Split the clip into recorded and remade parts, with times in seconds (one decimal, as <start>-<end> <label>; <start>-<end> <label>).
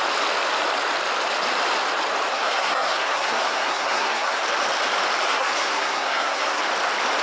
0.0-2.3 recorded; 2.3-4.4 remade; 4.4-5.3 recorded; 5.3-6.6 remade; 6.6-7.2 recorded